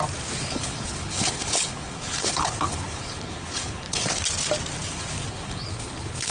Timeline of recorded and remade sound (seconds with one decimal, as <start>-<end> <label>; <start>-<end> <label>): 0.0-0.4 recorded; 0.4-4.2 remade; 4.2-4.8 recorded; 4.8-6.3 remade